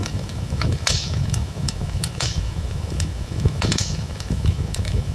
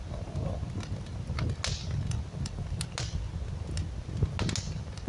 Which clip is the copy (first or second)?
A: first